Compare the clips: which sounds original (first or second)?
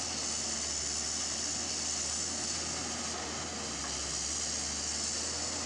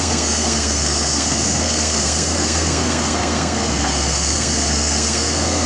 first